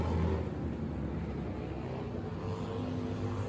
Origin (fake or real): real